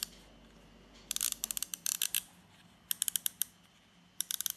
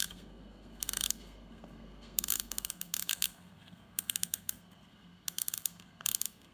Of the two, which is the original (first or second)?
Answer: first